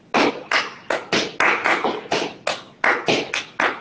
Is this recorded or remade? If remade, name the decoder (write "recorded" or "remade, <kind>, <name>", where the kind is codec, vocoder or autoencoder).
recorded